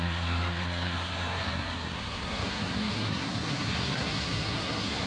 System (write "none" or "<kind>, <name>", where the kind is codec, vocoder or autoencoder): codec, SNAC